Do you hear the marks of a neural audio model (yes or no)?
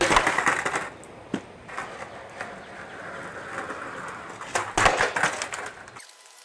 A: no